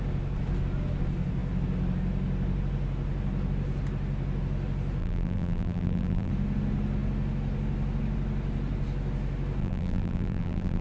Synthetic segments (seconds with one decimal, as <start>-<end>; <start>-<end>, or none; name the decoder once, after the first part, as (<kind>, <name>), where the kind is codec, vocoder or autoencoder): 5.0-6.3 (vocoder, BigVGAN v2); 9.6-10.8